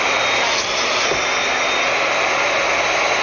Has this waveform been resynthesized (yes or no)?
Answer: no